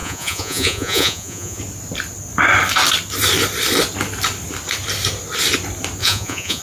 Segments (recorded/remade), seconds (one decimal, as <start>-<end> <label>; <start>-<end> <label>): 0.0-1.6 remade; 1.6-6.0 recorded; 6.0-6.6 remade